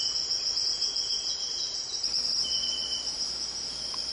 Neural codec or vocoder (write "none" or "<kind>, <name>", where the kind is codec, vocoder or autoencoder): none